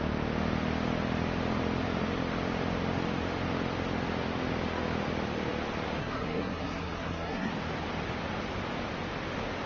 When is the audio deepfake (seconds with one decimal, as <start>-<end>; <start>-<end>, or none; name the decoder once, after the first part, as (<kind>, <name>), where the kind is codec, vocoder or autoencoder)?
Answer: 6.0-7.5 (codec, SNAC)